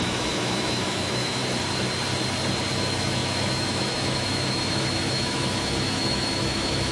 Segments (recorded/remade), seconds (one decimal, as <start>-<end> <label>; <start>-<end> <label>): 0.0-1.4 remade; 1.4-2.7 recorded; 2.7-6.9 remade